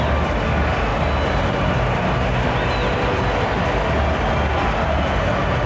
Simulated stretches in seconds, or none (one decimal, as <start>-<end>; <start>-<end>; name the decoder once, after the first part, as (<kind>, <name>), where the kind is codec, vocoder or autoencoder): none